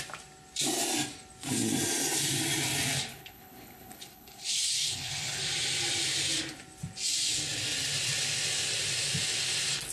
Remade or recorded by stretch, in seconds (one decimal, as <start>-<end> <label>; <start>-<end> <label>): 0.0-3.1 recorded; 3.1-5.4 remade; 5.4-9.9 recorded